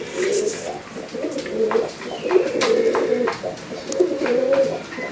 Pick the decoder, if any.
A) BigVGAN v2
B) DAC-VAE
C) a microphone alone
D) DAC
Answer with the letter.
C